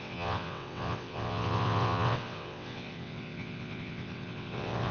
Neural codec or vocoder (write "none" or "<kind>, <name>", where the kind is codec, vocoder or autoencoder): vocoder, WaveNeXt